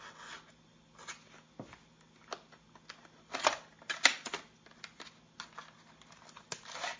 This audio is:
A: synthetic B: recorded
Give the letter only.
B